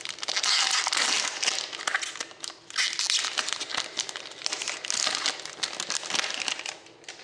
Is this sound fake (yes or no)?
no